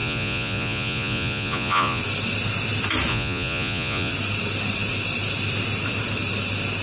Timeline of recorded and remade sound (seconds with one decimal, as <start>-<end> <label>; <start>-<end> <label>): 0.0-2.0 remade; 2.0-3.1 recorded; 3.1-4.1 remade; 4.1-6.8 recorded